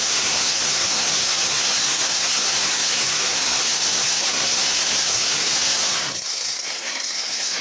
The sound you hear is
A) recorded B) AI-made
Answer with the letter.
B